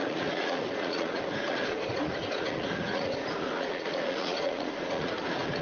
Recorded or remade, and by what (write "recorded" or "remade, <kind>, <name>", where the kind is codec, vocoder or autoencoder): remade, vocoder, Vocos